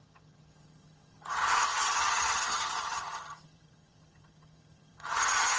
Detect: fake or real fake